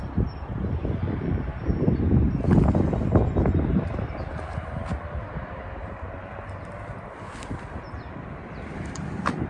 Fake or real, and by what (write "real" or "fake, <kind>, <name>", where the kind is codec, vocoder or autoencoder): real